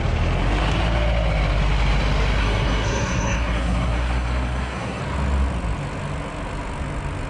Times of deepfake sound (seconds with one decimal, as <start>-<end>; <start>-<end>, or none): 2.4-5.0